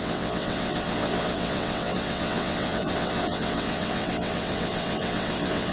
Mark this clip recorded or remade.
remade